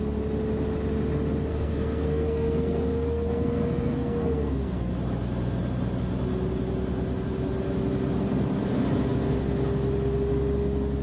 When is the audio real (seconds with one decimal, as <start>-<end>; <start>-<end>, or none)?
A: 0.0-1.5; 4.9-11.0

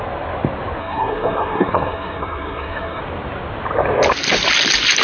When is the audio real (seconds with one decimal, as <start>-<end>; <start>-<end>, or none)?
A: 0.0-0.8; 3.0-5.0

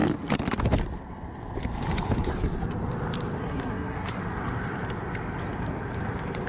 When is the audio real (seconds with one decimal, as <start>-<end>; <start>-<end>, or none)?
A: 0.0-3.4; 4.2-6.5

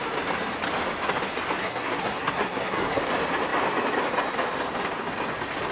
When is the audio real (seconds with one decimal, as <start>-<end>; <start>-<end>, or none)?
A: 0.0-1.6; 3.0-5.7

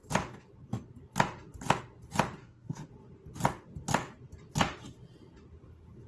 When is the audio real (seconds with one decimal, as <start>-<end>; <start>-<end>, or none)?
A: 0.0-2.4; 2.9-6.1